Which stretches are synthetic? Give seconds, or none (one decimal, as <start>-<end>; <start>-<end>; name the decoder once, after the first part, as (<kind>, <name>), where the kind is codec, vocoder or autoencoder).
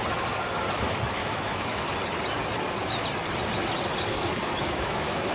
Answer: 1.2-1.9 (autoencoder, DAC-VAE); 4.1-5.3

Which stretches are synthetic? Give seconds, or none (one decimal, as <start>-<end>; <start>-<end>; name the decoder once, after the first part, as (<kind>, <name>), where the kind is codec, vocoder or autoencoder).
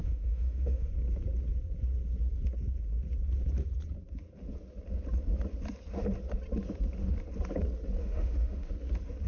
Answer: 0.0-0.9 (autoencoder, DAC-VAE); 8.0-8.7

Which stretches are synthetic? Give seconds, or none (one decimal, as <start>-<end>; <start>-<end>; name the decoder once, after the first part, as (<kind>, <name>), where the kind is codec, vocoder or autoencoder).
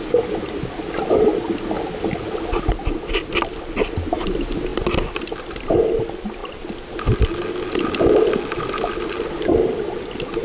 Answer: none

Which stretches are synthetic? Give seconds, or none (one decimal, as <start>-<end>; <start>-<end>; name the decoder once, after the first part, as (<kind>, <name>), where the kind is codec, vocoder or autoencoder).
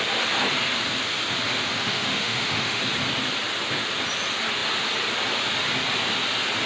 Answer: 1.6-2.8 (autoencoder, DAC-VAE)